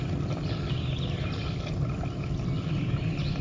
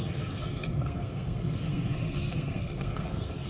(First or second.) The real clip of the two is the first